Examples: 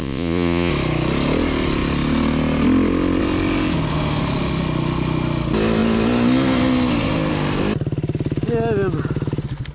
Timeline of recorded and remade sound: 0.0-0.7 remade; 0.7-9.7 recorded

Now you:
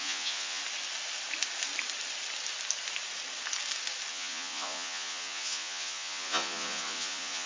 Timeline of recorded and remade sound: 0.0-0.6 remade; 0.6-4.1 recorded; 4.1-7.5 remade

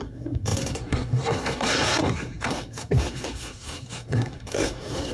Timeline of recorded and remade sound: 0.0-5.1 remade

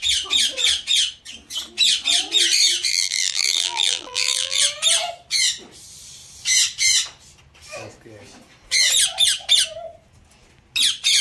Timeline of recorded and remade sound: 0.0-2.9 recorded; 2.9-4.6 remade; 4.6-11.2 recorded

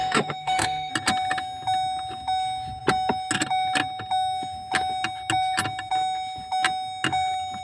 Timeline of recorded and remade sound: 0.0-0.9 remade; 0.9-7.6 recorded

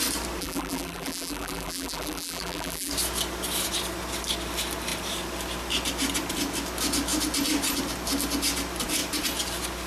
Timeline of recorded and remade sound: 0.0-0.4 recorded; 0.4-2.9 remade; 2.9-9.9 recorded

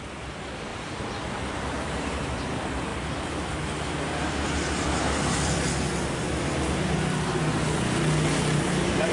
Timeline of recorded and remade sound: 0.0-9.1 recorded

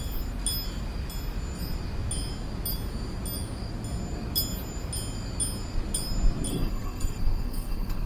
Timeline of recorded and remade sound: 0.0-6.5 recorded; 6.5-8.1 remade